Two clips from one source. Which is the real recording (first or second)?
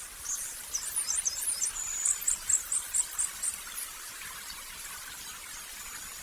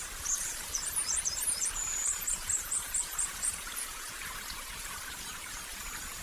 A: first